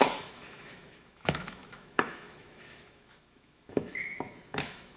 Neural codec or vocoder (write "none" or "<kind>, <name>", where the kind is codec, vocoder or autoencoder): autoencoder, DAC-VAE